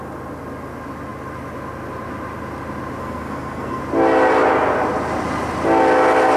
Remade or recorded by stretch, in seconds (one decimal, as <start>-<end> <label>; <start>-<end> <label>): 0.0-3.0 recorded; 3.0-3.8 remade; 3.8-6.4 recorded